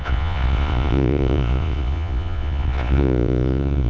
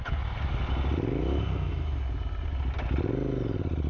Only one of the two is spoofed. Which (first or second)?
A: first